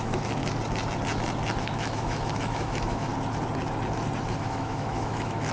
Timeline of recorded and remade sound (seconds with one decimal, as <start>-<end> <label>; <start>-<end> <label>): 0.0-0.4 remade; 0.4-1.6 recorded; 1.6-3.1 remade; 3.1-4.4 recorded; 4.4-5.5 remade